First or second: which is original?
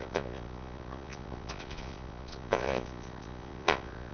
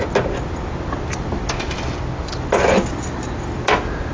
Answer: second